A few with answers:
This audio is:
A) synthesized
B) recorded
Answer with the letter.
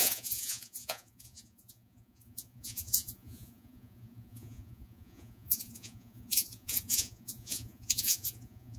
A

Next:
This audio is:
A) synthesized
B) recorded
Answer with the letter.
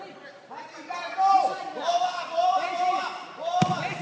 B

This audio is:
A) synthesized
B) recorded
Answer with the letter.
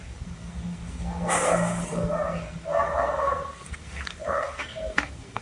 A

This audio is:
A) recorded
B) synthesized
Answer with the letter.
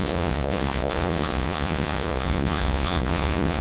B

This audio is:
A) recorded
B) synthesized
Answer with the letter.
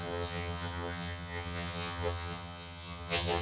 B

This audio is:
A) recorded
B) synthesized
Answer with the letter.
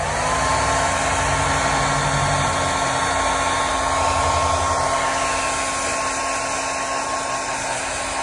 A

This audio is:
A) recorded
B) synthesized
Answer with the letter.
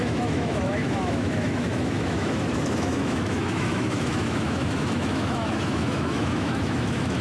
B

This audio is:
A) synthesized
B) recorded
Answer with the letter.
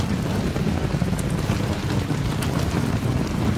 B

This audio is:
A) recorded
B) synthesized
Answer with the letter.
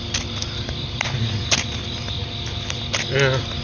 A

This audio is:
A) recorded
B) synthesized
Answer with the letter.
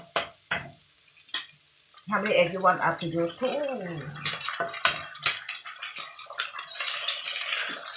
A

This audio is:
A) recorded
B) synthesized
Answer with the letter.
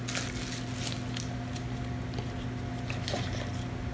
A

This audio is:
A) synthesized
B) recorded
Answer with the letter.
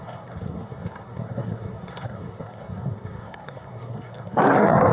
A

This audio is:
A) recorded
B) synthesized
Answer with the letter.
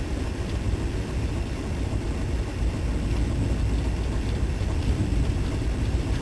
A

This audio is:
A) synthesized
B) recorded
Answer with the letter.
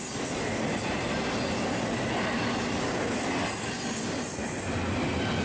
B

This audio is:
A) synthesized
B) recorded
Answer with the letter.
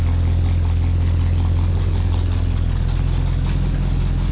B